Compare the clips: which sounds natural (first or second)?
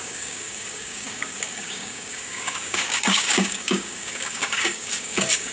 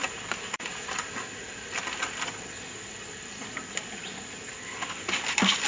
second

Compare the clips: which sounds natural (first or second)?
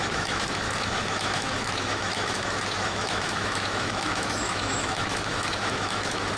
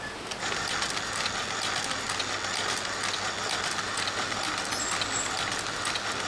second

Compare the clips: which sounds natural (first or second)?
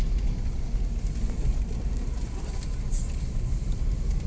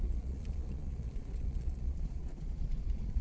first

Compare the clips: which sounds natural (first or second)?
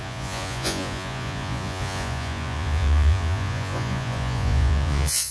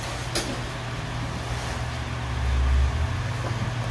second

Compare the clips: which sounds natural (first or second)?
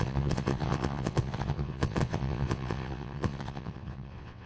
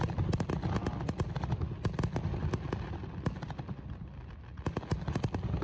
second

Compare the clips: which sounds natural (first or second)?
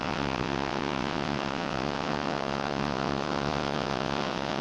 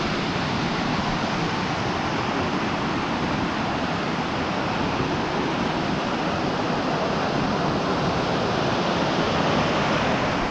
second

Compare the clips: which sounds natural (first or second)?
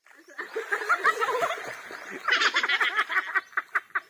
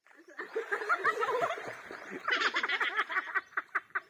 first